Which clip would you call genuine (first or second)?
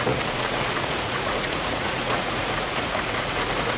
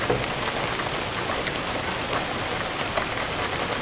second